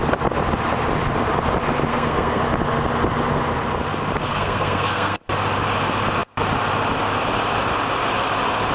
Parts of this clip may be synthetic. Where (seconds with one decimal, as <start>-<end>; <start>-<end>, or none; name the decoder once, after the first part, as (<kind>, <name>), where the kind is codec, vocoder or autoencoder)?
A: 1.9-2.4 (codec, SNAC); 4.3-5.2